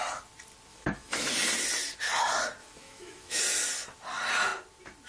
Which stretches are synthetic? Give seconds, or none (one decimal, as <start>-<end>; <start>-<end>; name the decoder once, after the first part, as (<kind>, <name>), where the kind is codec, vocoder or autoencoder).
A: 0.7-1.3 (autoencoder, DAC-VAE); 2.6-3.4